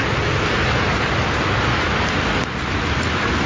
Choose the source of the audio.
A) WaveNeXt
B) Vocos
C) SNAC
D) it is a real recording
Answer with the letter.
D